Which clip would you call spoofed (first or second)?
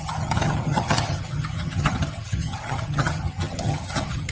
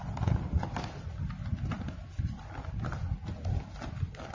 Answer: first